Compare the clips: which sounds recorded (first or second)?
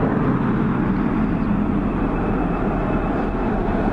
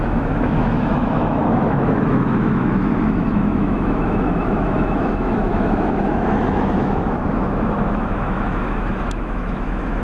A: first